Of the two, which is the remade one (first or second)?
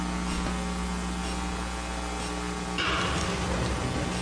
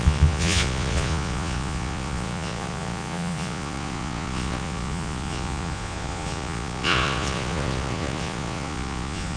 second